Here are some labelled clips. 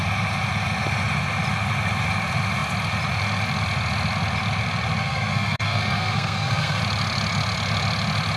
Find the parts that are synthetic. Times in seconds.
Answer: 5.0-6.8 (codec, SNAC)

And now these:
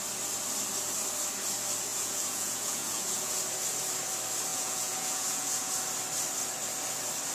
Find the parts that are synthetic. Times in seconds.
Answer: 1.9-3.4 (vocoder, Vocos); 4.5-5.7

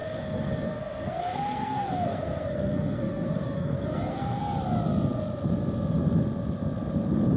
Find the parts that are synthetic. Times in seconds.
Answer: 0.0-4.4 (codec, SNAC)

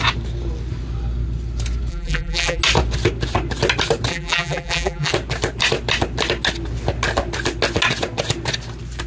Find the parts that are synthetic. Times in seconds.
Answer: 1.9-2.6 (vocoder, BigVGAN v2); 4.1-5.1

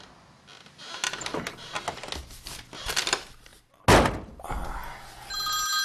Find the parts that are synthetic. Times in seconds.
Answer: none

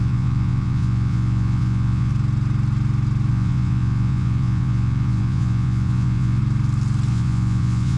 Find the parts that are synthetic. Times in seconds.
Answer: 0.0-2.1 (vocoder, Vocos); 3.3-6.4; 7.1-8.0

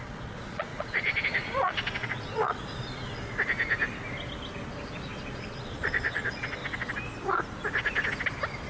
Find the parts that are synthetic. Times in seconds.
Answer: 0.0-3.3 (vocoder, Vocos); 5.1-6.6

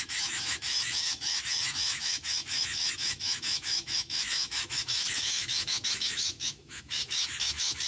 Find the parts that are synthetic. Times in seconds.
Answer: 0.0-7.9 (autoencoder, DAC-VAE)